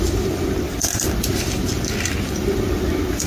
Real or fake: fake